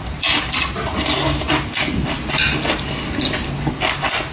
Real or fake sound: real